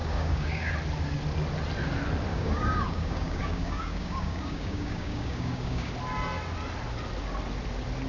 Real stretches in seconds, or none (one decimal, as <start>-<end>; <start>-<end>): 0.7-2.3; 5.9-8.1